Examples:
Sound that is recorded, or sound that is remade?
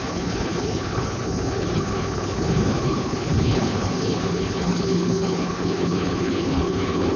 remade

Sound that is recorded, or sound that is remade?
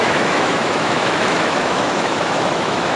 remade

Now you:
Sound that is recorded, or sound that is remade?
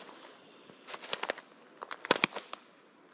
recorded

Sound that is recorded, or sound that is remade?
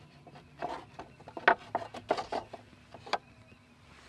recorded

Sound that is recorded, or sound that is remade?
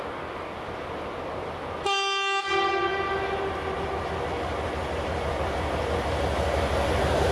recorded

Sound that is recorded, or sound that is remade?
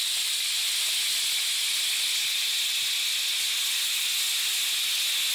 recorded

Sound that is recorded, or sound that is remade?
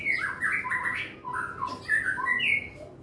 recorded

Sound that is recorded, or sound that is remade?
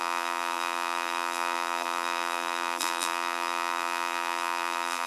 remade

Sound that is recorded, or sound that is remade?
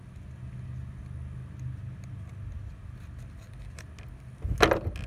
recorded